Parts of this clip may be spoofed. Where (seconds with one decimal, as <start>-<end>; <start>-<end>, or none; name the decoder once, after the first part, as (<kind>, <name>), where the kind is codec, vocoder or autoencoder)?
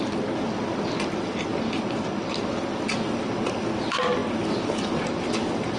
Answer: none